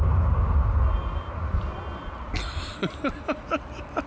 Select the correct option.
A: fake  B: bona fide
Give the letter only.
B